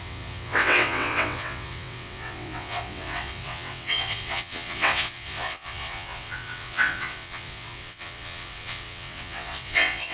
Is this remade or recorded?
remade